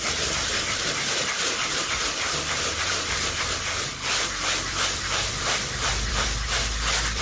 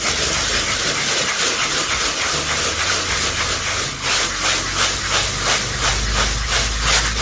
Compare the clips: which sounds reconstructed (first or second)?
first